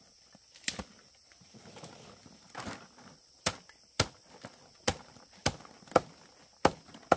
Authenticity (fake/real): real